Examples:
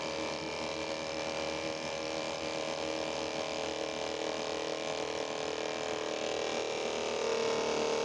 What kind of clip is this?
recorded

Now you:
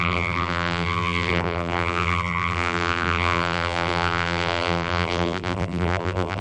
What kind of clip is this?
remade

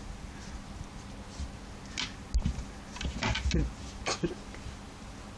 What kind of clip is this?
recorded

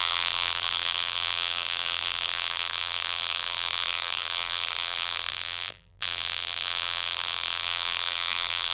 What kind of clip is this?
remade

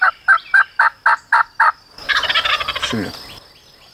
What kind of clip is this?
recorded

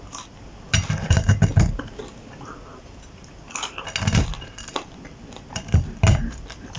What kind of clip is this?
recorded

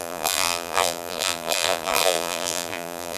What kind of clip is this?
remade